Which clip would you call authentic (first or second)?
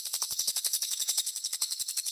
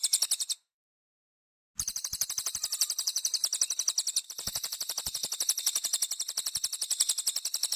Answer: second